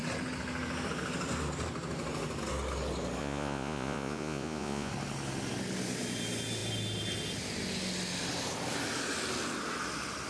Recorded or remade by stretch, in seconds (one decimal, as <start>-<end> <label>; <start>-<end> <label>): 0.0-3.2 recorded; 3.2-4.9 remade; 4.9-10.3 recorded